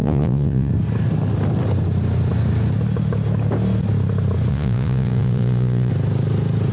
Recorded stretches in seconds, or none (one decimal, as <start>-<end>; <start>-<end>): 0.7-4.5; 5.9-6.7